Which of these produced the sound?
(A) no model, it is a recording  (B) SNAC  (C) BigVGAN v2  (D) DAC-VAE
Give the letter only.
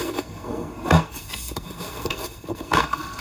B